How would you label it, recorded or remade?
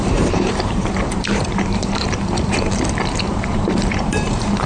remade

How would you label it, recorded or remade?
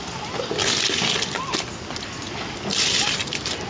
recorded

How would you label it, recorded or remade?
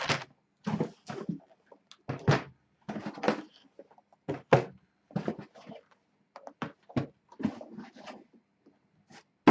recorded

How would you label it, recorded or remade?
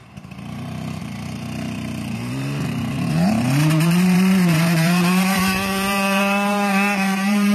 remade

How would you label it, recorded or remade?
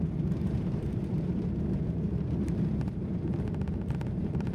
remade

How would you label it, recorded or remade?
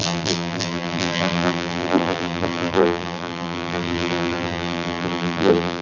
remade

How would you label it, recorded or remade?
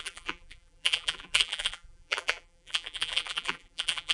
remade